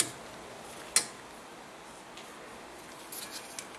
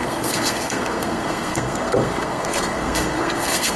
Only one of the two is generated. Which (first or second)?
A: second